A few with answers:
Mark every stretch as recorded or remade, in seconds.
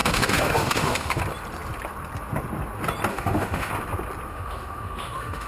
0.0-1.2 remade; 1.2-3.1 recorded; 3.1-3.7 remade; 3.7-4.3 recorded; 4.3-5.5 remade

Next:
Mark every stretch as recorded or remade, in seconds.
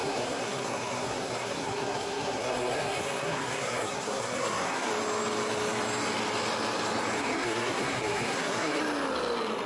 0.0-4.9 remade; 4.9-7.2 recorded; 7.2-8.8 remade; 8.8-9.7 recorded